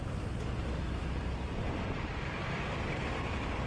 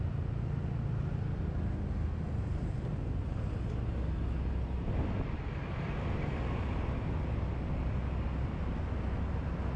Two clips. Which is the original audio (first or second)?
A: second